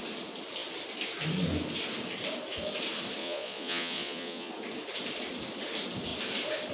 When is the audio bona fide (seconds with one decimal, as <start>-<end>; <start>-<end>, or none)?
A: 0.0-3.2; 4.5-6.7